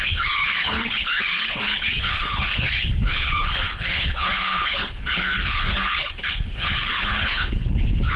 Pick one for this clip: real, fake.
fake